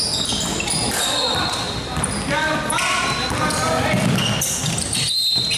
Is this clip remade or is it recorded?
recorded